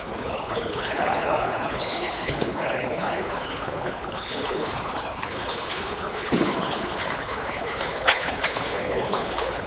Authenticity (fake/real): fake